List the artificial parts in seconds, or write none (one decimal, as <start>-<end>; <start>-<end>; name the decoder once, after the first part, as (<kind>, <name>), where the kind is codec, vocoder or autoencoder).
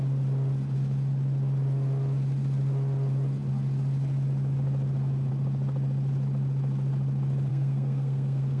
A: 7.5-8.6 (codec, SNAC)